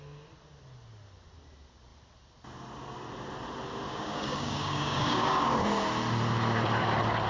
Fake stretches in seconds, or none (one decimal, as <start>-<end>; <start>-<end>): 3.9-5.6